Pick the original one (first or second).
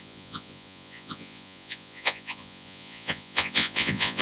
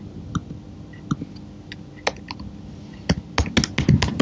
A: second